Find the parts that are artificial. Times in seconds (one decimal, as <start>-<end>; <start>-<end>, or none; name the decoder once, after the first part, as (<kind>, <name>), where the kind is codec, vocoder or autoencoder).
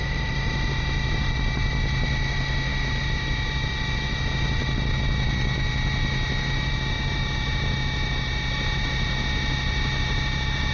none